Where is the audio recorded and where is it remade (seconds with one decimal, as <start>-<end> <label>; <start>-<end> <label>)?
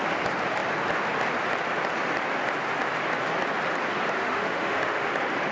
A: 0.0-4.2 recorded; 4.2-5.1 remade; 5.1-5.5 recorded